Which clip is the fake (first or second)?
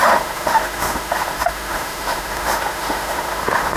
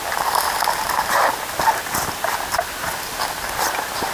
first